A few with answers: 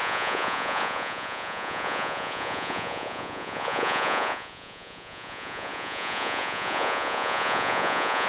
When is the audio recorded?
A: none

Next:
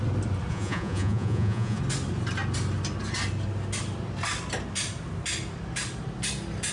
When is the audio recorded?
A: 0.0-0.5; 1.8-6.7

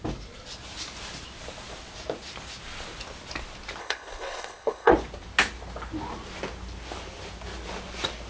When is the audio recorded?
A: 0.0-3.8; 4.9-8.3